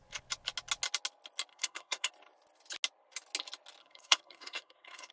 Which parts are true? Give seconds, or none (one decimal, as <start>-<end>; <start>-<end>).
0.0-1.5; 2.1-3.8

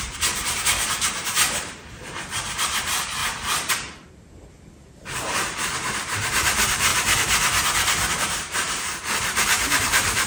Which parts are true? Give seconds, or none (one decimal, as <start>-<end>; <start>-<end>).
3.2-3.7; 6.9-8.1

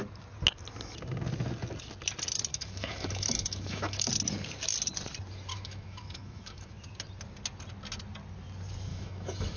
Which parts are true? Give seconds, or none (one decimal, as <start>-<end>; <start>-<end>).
0.0-2.5; 4.1-5.5; 6.7-8.9

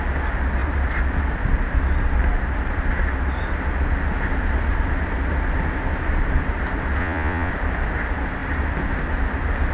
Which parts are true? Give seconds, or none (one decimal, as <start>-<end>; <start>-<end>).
0.0-7.0; 7.5-9.7

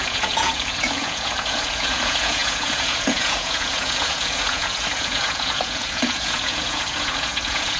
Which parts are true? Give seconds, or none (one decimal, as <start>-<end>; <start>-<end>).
none

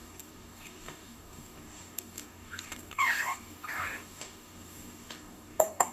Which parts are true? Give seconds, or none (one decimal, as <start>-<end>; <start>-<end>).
none